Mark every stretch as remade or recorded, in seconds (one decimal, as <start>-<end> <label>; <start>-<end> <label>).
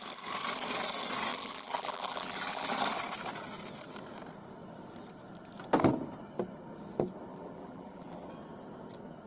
0.0-1.3 recorded; 1.3-2.7 remade; 2.7-7.3 recorded; 7.3-8.3 remade; 8.3-9.3 recorded